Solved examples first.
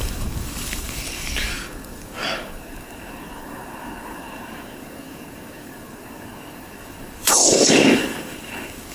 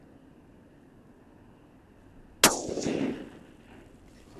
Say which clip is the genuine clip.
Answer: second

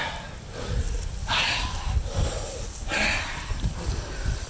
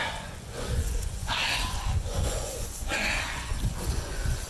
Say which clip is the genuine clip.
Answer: first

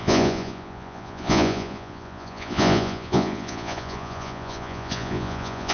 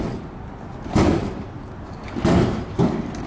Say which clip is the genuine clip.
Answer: second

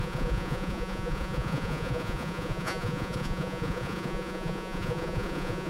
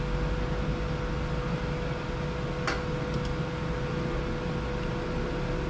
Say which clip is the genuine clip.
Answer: second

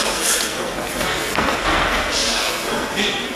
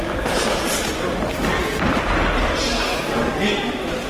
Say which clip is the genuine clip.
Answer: second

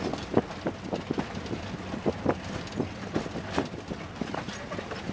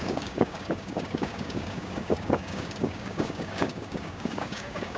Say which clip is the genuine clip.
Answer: first